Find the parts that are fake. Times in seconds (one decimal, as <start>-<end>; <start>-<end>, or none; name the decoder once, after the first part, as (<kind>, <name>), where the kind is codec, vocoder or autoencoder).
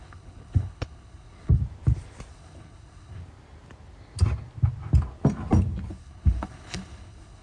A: 0.0-1.6 (codec, HILCodec); 2.3-3.2; 5.9-7.4